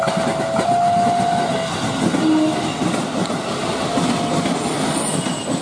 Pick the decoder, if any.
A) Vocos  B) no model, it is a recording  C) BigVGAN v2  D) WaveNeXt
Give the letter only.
B